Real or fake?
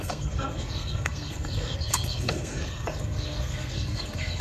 fake